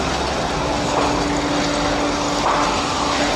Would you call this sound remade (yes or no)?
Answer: no